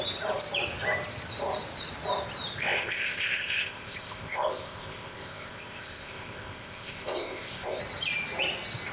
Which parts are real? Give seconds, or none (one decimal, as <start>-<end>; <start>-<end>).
0.0-2.6; 7.8-8.9